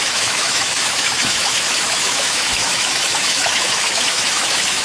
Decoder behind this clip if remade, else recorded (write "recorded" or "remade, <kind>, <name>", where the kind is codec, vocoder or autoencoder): remade, autoencoder, DAC-VAE